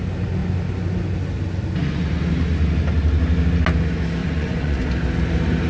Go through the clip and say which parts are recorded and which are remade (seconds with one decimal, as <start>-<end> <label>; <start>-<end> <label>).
0.0-4.2 recorded; 4.2-4.9 remade; 4.9-5.7 recorded